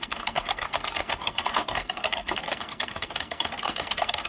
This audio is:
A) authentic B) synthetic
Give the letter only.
B